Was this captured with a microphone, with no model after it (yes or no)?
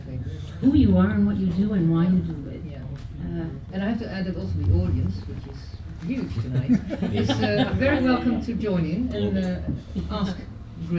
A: yes